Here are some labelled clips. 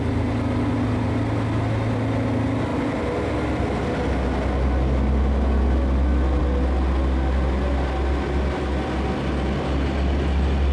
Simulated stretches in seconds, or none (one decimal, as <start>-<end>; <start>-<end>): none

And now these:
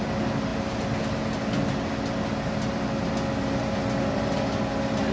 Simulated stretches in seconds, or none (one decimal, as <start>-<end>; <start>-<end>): none

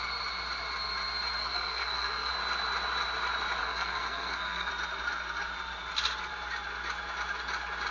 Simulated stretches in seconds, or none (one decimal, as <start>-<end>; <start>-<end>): 1.4-2.3; 3.6-4.7

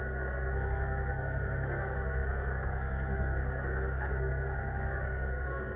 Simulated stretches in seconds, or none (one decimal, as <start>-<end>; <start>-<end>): 0.0-5.8

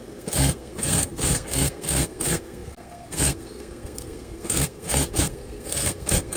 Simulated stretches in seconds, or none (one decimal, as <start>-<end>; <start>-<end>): 0.0-6.4